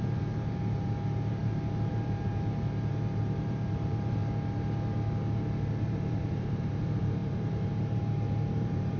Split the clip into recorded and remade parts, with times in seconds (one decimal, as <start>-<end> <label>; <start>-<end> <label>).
0.0-4.2 remade; 4.2-5.8 recorded; 5.8-9.0 remade